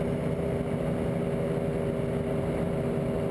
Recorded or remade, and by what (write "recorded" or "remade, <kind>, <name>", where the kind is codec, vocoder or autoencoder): recorded